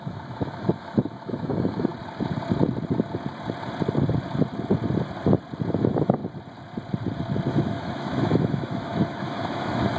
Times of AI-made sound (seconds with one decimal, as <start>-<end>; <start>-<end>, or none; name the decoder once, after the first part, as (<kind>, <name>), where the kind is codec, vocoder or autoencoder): 0.0-1.9 (autoencoder, DAC-VAE); 5.7-6.2; 7.5-10.0

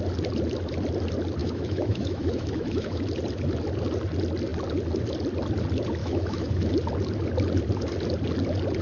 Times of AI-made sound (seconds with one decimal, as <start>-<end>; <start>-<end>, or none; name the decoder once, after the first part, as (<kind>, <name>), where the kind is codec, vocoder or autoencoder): 1.4-3.0 (autoencoder, DAC-VAE); 6.0-6.7

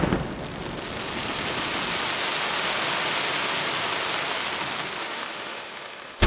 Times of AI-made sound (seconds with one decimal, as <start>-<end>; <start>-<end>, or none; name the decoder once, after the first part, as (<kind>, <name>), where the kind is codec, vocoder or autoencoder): 5.0-6.3 (autoencoder, DAC-VAE)

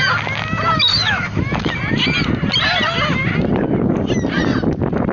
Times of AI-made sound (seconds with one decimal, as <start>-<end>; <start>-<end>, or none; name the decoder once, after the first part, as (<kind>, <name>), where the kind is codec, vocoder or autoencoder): 0.9-1.8 (autoencoder, DAC-VAE)